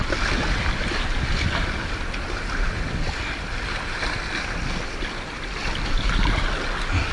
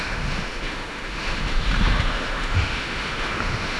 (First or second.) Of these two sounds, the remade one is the second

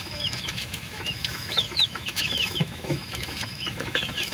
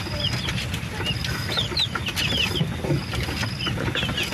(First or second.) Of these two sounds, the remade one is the first